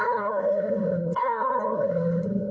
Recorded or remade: remade